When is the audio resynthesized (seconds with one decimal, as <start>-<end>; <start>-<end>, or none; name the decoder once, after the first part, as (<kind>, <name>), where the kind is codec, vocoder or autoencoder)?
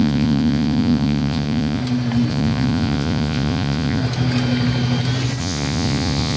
0.0-1.8 (vocoder, Vocos); 2.3-4.0; 5.4-6.4